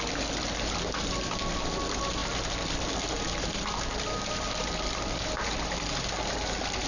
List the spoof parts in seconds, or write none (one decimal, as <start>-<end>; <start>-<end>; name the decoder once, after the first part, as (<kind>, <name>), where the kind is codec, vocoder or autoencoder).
none